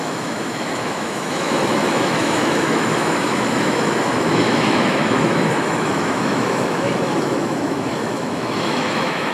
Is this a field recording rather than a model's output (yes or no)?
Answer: no